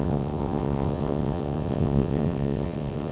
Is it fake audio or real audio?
fake